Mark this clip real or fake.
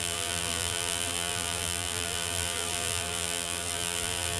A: fake